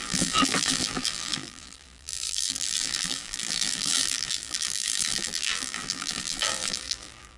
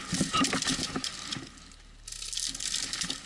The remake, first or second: first